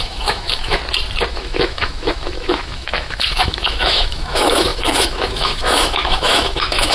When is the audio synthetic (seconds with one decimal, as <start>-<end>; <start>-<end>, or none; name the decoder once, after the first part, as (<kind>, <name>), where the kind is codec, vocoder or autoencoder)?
0.0-0.8 (autoencoder, DAC-VAE); 1.3-6.9